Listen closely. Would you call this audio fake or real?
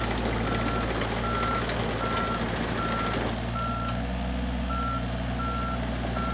real